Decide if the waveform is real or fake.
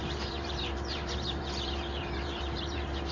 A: fake